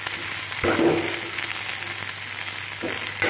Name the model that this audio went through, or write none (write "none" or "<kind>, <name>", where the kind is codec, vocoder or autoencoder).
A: none